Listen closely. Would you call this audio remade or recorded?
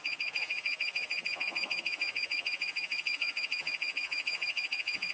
remade